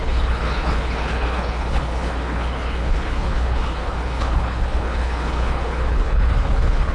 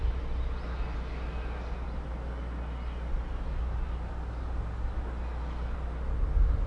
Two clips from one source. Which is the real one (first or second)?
second